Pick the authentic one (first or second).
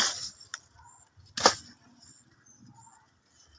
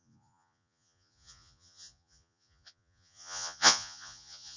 first